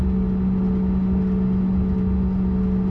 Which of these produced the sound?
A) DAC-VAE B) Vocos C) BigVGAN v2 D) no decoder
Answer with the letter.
D